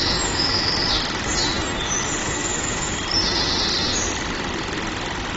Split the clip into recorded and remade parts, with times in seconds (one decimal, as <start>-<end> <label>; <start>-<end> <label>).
0.0-0.7 remade; 0.7-2.2 recorded; 2.2-2.9 remade; 2.9-5.4 recorded